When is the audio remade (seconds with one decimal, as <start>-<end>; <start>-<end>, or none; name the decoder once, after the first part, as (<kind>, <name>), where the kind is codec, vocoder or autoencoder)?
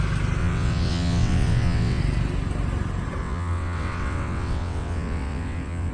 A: 0.4-2.0 (vocoder, WaveNeXt); 3.2-5.9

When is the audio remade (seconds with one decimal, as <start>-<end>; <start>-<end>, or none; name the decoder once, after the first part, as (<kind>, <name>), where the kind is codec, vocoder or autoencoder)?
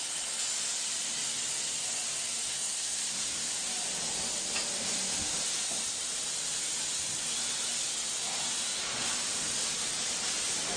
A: 2.5-3.5 (codec, SNAC)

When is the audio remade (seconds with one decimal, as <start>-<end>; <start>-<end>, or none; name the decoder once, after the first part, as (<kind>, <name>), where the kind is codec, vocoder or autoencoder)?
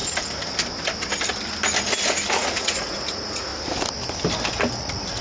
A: 2.3-3.5 (vocoder, Vocos); 4.8-5.2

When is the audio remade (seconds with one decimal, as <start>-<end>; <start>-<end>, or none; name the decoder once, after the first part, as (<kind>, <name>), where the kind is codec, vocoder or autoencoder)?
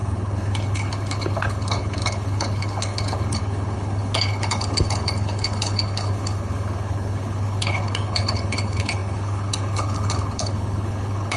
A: 0.0-11.4 (codec, HILCodec)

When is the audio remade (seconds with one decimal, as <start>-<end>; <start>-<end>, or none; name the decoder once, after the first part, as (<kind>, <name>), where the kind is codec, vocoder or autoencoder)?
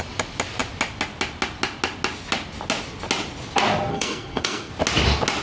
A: 3.9-4.7 (codec, SNAC)